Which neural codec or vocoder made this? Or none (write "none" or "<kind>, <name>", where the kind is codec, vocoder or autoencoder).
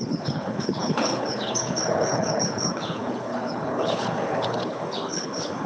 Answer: codec, HILCodec